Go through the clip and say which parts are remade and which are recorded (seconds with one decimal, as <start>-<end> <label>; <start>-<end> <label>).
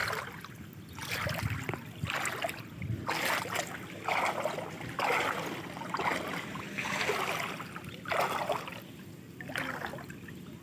0.0-10.6 recorded